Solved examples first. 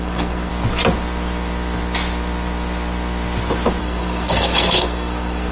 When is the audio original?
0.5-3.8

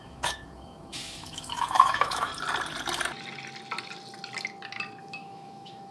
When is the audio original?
2.3-5.0

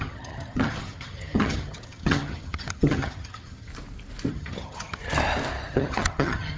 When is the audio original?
3.7-4.3; 5.0-5.7

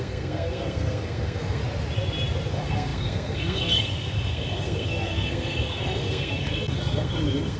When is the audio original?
1.6-2.5